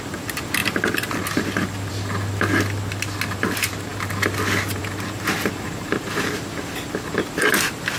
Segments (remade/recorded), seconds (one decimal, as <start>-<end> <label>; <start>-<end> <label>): 0.0-8.0 recorded